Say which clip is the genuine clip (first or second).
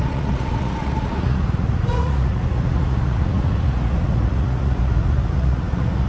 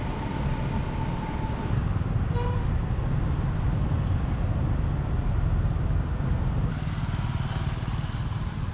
second